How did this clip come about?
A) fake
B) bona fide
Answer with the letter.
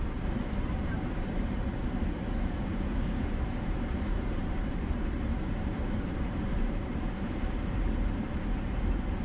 A